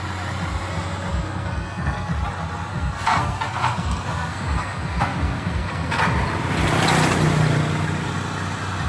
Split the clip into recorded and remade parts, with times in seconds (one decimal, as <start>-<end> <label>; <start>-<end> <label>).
0.0-1.1 recorded; 1.1-2.1 remade; 2.1-2.7 recorded; 2.7-6.0 remade; 6.0-8.9 recorded